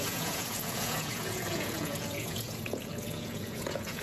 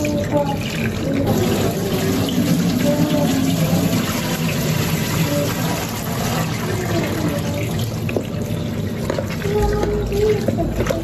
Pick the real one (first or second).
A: second